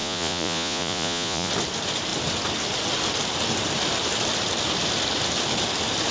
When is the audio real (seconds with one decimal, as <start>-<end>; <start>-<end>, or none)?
1.5-6.1